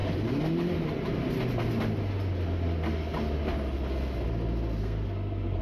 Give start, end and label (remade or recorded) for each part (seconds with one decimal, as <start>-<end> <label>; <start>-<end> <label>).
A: 0.0-4.8 recorded; 4.8-5.6 remade